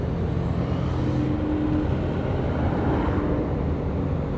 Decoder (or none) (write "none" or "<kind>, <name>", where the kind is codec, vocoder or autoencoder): none